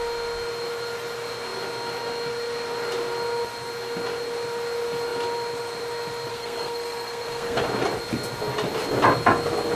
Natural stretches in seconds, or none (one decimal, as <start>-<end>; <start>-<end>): 0.0-6.3; 7.6-9.8